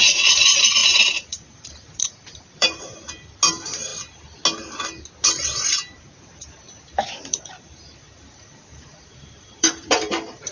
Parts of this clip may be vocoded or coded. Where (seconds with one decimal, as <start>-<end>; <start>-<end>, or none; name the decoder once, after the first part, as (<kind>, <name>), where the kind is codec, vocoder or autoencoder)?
0.8-2.8 (vocoder, BigVGAN v2); 6.4-10.5